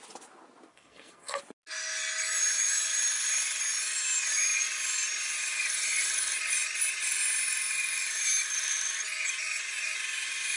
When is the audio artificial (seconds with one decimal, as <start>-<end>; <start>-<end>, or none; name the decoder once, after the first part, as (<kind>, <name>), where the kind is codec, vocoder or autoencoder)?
0.7-1.4 (codec, SNAC)